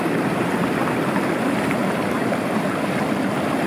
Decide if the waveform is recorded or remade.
recorded